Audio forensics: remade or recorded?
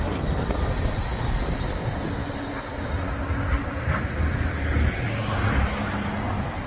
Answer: recorded